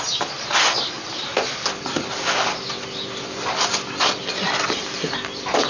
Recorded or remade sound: recorded